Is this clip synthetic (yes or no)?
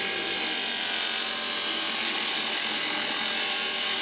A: no